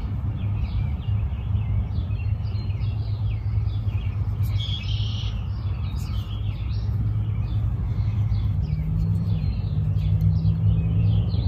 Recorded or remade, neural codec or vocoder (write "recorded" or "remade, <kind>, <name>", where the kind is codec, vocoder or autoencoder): recorded